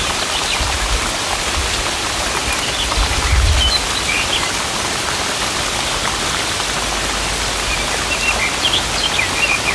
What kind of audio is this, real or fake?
real